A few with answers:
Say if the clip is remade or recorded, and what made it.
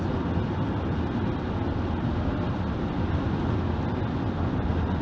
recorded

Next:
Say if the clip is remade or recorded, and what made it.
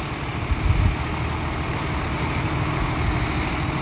recorded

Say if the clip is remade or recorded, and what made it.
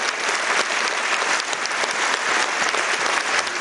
recorded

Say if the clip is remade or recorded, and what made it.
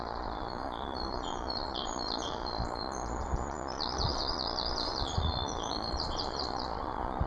remade, vocoder, Vocos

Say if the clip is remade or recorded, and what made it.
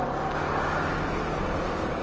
recorded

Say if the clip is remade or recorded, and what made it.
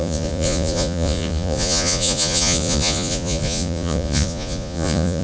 remade, vocoder, Vocos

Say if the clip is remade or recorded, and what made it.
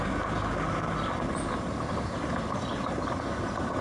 recorded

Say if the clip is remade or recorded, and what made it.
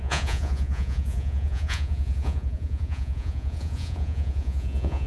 remade, vocoder, Vocos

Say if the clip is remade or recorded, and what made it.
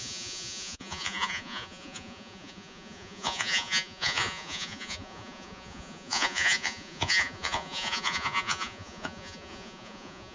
remade, vocoder, Vocos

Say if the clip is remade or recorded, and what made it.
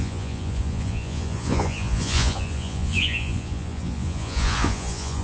remade, vocoder, Vocos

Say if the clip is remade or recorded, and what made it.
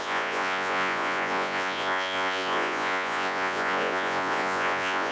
remade, vocoder, Vocos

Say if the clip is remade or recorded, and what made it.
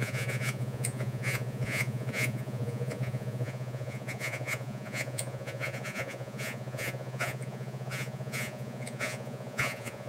remade, vocoder, Vocos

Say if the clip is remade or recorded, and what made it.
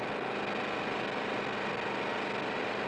recorded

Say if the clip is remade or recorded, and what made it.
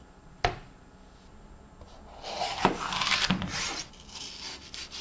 recorded